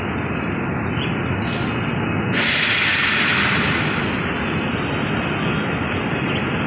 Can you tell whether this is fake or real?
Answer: real